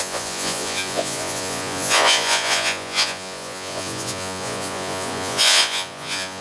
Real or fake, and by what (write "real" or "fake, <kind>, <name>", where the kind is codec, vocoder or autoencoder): fake, vocoder, Vocos